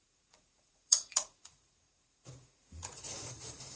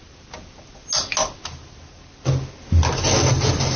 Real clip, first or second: second